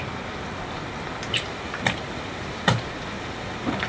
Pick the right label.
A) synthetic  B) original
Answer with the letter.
B